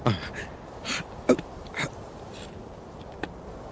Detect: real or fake real